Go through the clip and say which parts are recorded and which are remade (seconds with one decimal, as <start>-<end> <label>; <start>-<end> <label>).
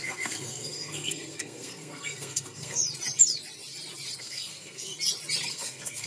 0.0-2.8 remade; 2.8-4.2 recorded; 4.2-4.9 remade; 4.9-5.5 recorded; 5.5-6.1 remade